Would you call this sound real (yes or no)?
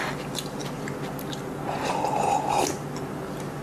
yes